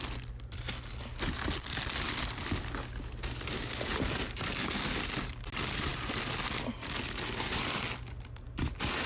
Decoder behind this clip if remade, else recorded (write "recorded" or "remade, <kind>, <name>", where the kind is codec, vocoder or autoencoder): recorded